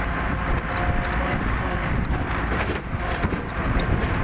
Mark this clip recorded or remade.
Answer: recorded